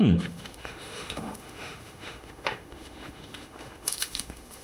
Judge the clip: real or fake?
fake